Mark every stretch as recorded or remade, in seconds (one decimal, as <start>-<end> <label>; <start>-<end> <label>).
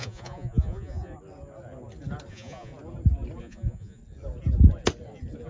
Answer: 0.0-1.1 remade; 1.1-2.3 recorded; 2.3-2.7 remade; 2.7-3.4 recorded; 3.4-4.0 remade; 4.0-5.5 recorded